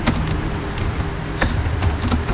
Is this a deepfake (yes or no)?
no